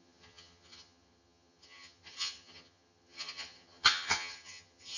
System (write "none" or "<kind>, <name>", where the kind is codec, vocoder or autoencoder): vocoder, HiFi-GAN